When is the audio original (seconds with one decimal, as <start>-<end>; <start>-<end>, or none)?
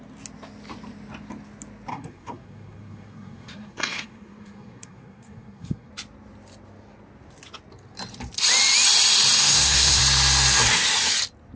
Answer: 0.0-1.9; 5.9-9.4; 10.0-11.6